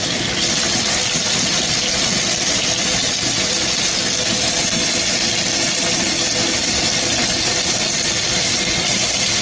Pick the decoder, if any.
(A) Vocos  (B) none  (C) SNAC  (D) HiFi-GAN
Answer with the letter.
B